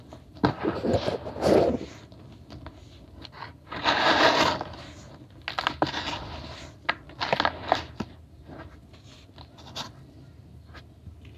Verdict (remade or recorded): recorded